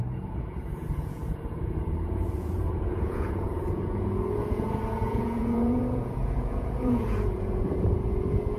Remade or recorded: remade